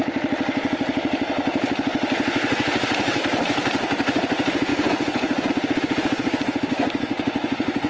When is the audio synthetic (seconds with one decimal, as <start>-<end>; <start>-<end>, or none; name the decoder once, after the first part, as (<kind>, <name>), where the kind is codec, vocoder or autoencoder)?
4.7-5.5 (vocoder, Vocos); 6.7-7.9

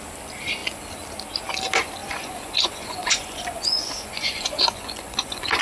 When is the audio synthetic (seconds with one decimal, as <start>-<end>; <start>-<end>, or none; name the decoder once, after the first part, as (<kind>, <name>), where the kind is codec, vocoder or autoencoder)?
2.0-5.6 (vocoder, Vocos)

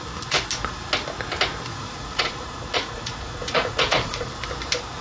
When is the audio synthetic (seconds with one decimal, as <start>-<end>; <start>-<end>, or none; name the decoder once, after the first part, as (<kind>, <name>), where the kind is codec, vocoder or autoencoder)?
1.7-4.3 (vocoder, Vocos)

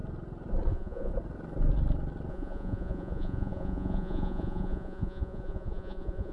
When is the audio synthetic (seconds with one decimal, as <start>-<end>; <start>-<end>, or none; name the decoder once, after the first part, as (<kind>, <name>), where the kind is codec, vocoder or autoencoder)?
0.7-1.1 (vocoder, Vocos); 2.3-6.3

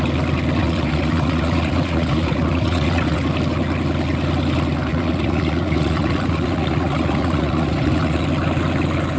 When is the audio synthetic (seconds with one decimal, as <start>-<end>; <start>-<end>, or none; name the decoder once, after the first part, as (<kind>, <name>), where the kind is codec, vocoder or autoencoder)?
0.6-3.2 (vocoder, Vocos); 4.9-8.2

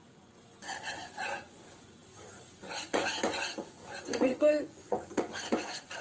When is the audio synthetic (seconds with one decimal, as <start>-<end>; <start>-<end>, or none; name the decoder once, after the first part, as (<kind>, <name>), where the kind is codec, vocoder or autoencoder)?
0.0-6.0 (vocoder, Vocos)